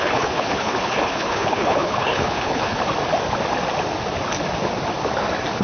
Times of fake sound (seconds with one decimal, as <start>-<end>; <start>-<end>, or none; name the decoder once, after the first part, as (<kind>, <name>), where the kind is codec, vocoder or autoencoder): 0.0-2.8 (codec, HILCodec)